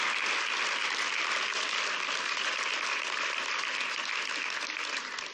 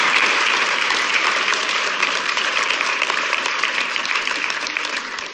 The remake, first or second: second